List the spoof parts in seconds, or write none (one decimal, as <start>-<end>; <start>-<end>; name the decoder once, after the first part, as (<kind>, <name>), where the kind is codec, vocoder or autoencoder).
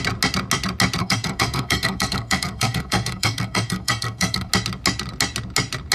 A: 1.0-4.5 (codec, SNAC)